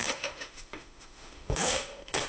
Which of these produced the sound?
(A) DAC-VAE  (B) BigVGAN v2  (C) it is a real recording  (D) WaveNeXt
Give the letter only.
A